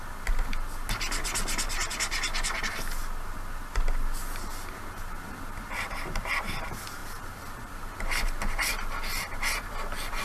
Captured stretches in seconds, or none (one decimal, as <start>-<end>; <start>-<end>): 0.0-10.2